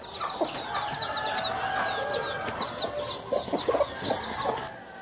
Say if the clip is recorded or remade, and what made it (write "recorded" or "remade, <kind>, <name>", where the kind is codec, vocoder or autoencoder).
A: recorded